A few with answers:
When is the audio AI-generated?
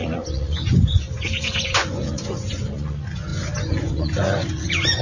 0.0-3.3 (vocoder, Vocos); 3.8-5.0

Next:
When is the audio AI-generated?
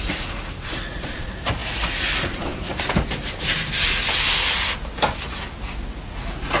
0.0-2.7 (vocoder, Vocos); 5.9-6.6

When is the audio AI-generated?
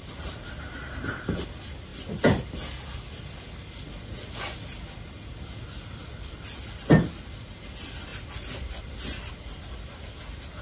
none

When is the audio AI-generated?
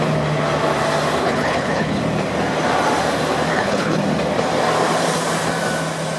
1.2-2.0 (codec, HILCodec); 3.5-4.0